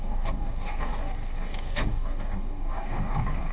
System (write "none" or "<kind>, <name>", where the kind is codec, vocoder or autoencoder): codec, DAC